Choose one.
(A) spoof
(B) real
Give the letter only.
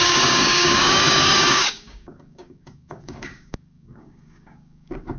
A